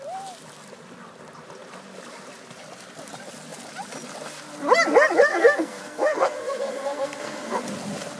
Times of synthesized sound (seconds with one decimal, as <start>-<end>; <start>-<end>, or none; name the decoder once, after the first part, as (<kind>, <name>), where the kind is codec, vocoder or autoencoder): 5.3-7.6 (codec, SNAC)

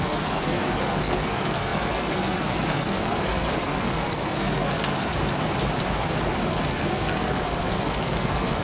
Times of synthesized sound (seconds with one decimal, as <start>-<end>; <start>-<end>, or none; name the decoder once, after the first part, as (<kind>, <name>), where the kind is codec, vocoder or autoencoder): 0.0-5.1 (codec, SNAC); 6.5-8.6

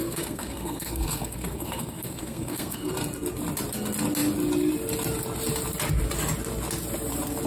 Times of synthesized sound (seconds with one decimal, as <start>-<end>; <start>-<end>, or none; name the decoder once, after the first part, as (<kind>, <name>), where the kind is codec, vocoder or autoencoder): 0.0-2.9 (codec, SNAC)

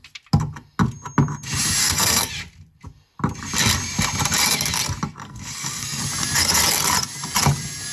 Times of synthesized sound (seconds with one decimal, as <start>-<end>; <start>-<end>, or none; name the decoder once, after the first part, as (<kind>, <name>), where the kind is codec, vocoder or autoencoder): 1.8-2.3 (codec, SNAC); 5.2-6.0

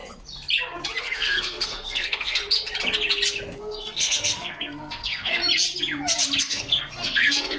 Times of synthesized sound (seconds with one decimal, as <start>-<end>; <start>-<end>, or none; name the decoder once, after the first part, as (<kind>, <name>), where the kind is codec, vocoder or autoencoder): 1.0-2.4 (codec, SNAC); 3.6-5.4; 6.4-7.6

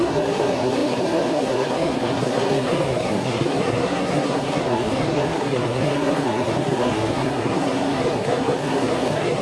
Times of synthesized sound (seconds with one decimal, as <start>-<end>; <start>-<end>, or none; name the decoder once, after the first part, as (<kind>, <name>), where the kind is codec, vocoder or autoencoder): 0.0-9.4 (codec, SNAC)

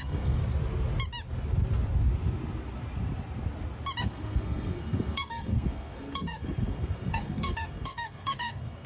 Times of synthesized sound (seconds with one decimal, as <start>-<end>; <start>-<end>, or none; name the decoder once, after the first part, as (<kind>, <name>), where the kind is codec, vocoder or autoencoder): 0.0-0.4 (codec, SNAC); 4.0-8.9

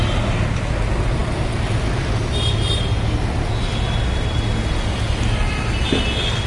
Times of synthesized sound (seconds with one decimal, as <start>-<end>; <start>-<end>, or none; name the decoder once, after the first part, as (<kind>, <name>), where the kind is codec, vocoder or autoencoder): none